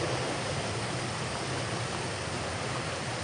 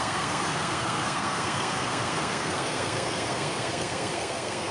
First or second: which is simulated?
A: second